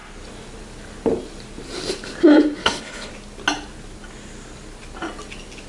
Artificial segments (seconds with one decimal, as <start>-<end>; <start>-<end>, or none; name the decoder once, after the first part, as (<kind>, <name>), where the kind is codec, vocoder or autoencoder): 2.6-3.1 (codec, HILCodec)